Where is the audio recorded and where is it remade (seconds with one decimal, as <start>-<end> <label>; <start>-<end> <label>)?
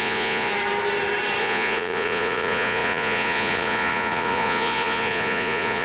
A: 0.0-0.5 remade; 0.5-1.4 recorded; 1.4-5.8 remade